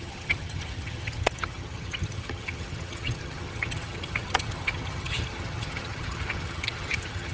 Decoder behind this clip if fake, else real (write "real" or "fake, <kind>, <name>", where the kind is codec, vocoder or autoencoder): fake, vocoder, HiFi-GAN